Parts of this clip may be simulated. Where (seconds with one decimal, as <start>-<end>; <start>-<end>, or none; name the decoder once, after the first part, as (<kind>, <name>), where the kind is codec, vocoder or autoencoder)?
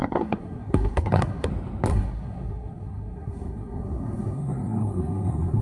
0.0-1.5 (codec, SNAC); 1.9-5.6